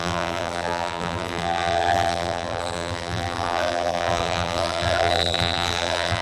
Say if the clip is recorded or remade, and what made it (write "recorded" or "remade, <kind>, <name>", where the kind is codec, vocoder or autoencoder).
remade, vocoder, BigVGAN v2